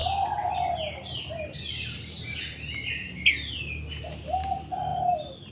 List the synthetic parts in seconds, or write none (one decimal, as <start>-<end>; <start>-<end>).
none